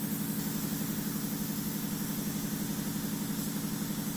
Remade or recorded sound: recorded